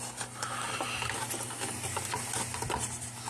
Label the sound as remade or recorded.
recorded